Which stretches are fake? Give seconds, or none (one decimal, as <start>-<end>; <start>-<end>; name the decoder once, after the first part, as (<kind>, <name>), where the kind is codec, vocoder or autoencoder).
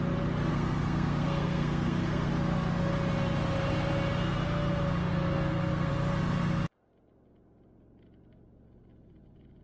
0.5-2.3 (codec, SNAC); 5.1-5.9